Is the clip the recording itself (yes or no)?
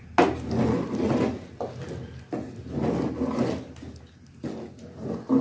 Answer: yes